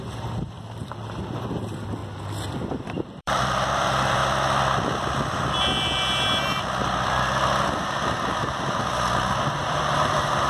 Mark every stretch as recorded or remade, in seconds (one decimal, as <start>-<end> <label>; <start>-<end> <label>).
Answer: 0.0-2.0 remade; 2.0-3.2 recorded; 3.2-4.2 remade; 4.2-8.7 recorded; 8.7-10.5 remade

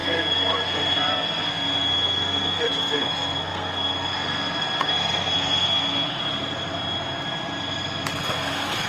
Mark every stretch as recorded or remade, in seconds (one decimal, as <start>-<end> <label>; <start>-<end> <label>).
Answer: 0.0-6.2 remade; 6.2-8.2 recorded; 8.2-8.9 remade